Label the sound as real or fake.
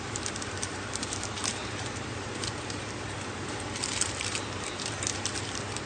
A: fake